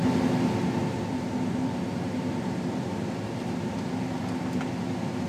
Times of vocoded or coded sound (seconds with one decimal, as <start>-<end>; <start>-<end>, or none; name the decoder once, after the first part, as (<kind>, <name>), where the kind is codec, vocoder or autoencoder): 0.6-3.8 (vocoder, BigVGAN v2)